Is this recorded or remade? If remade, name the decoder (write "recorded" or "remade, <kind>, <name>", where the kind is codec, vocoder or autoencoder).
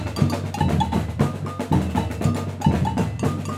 recorded